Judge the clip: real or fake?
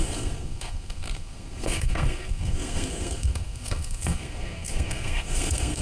fake